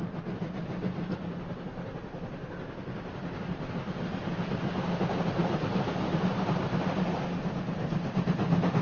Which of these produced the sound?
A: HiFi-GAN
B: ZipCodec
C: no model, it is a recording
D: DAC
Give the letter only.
C